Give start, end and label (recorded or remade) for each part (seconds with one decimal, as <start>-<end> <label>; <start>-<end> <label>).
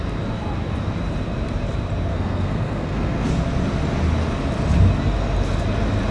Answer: 0.0-2.1 recorded; 2.1-3.3 remade; 3.3-6.1 recorded